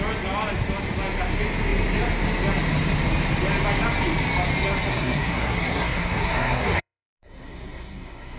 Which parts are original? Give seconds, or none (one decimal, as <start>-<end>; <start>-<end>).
0.0-4.9

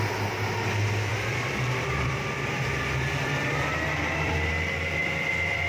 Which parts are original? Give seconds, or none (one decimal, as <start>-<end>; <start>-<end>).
0.0-1.1; 4.5-5.0